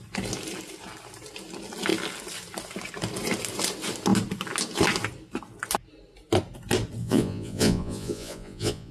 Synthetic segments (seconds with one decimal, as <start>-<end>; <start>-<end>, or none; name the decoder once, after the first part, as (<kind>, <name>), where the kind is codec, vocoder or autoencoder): 7.0-8.9 (vocoder, Vocos)